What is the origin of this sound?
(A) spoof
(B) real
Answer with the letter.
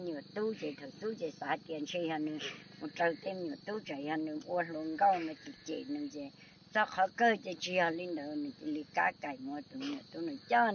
B